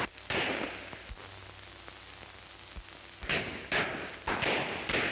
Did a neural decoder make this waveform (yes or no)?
no